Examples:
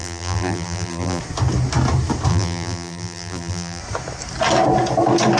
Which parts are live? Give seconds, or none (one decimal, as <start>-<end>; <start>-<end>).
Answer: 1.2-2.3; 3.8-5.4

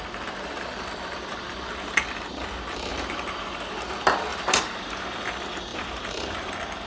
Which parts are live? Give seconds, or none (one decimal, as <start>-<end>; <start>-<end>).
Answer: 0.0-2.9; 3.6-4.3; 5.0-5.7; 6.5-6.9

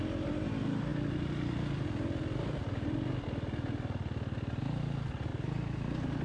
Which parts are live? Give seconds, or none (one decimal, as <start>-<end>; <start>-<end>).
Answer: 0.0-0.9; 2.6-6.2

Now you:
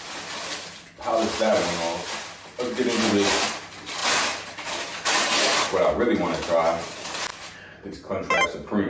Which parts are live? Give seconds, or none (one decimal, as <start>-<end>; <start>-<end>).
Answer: 0.0-7.3